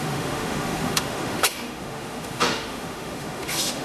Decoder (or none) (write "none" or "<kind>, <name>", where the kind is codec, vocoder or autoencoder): autoencoder, DAC-VAE